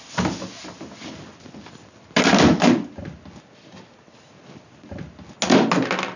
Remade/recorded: recorded